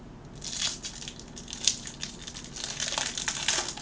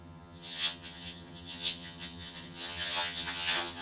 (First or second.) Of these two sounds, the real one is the first